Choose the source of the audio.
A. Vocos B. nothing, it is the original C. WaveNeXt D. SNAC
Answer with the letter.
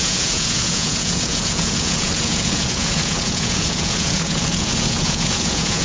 A